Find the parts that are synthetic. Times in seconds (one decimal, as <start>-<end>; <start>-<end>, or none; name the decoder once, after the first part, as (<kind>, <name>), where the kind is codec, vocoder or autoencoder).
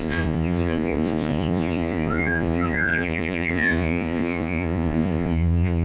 0.0-5.8 (vocoder, Vocos)